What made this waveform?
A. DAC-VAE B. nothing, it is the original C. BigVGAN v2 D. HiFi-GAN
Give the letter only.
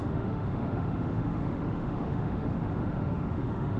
A